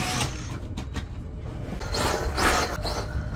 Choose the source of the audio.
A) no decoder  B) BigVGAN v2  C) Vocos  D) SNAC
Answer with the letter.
A